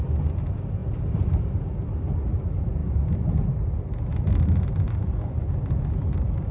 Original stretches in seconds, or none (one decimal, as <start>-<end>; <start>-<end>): 0.0-0.8; 1.6-6.5